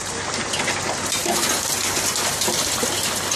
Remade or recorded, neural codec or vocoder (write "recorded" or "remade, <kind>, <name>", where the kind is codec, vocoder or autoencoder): recorded